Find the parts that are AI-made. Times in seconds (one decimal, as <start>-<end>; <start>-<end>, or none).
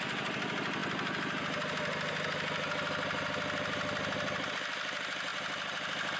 none